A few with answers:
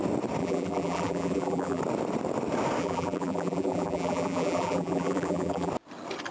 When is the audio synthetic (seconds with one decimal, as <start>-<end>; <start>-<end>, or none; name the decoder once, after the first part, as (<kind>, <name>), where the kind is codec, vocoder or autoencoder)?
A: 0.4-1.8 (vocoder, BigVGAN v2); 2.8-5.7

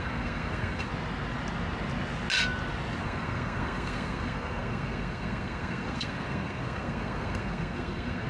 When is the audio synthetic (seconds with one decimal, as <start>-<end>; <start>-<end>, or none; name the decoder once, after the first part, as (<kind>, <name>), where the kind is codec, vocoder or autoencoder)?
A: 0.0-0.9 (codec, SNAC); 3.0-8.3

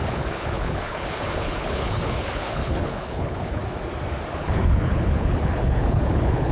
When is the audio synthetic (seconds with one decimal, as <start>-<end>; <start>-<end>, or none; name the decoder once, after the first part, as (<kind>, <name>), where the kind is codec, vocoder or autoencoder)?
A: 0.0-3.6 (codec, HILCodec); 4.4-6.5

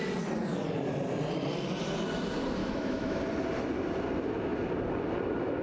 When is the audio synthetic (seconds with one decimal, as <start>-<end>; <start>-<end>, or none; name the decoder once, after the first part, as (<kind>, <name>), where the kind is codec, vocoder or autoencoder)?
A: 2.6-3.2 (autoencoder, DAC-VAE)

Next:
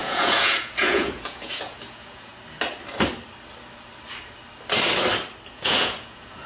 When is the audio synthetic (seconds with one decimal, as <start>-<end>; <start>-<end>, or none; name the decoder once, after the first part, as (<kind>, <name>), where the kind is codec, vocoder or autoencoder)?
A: 0.0-2.3 (vocoder, Vocos); 5.5-6.5